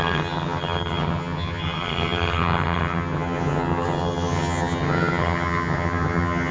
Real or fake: fake